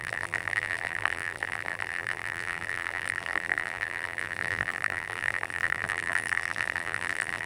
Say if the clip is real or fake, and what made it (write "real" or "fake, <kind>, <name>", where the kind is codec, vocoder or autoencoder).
fake, vocoder, BigVGAN v2